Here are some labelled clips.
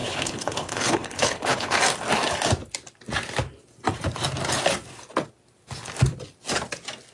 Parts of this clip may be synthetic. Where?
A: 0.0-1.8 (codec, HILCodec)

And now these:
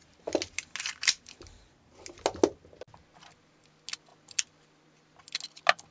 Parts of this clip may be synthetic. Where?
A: none